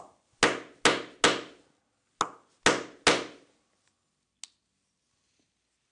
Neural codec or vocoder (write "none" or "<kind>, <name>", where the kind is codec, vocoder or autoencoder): none